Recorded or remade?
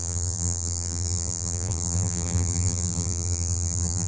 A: remade